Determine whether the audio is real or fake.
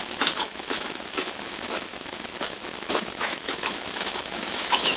fake